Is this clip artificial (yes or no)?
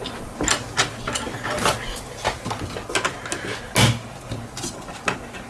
no